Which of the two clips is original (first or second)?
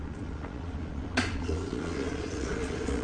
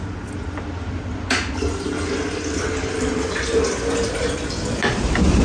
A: second